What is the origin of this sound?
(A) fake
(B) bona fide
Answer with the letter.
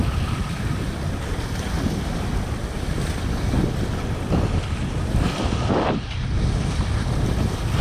B